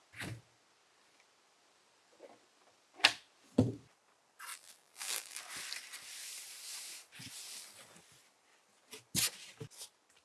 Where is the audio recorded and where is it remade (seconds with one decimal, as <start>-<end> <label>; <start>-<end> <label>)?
0.0-4.5 recorded; 4.5-5.4 remade; 5.4-10.2 recorded